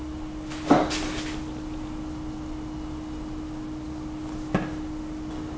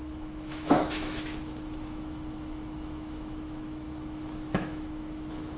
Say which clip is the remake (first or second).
second